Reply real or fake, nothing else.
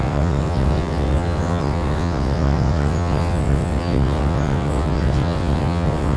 fake